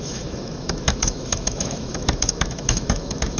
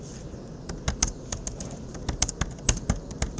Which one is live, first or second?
second